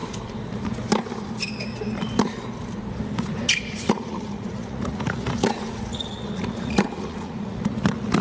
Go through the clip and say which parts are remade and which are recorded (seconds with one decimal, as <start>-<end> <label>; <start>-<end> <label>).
0.0-3.7 recorded; 3.7-8.2 remade